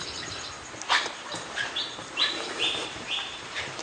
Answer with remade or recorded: remade